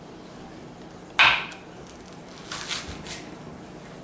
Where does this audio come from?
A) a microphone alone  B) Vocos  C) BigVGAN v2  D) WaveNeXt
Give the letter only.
A